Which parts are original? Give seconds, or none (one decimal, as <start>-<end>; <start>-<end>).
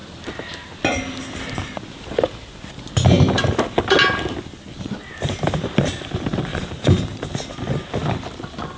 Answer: 0.0-6.5; 7.3-8.8